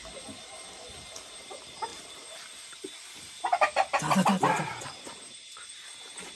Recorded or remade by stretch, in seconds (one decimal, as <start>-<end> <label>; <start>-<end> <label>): 0.0-1.9 recorded; 1.9-4.8 remade; 4.8-6.4 recorded